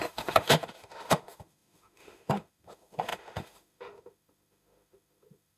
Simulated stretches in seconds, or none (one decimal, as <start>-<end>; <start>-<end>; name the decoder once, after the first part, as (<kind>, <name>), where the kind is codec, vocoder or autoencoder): 0.0-5.6 (autoencoder, DAC-VAE)